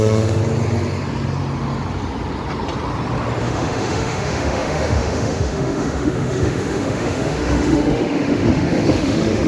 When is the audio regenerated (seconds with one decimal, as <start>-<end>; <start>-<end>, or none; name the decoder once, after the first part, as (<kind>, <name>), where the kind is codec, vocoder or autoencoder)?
0.0-0.4 (autoencoder, DAC-VAE); 3.4-9.5